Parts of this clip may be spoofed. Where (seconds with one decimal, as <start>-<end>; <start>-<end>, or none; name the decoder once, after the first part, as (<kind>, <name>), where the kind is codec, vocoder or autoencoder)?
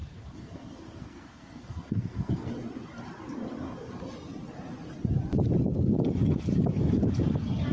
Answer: 0.0-2.5 (codec, SNAC)